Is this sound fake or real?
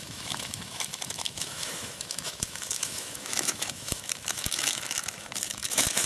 fake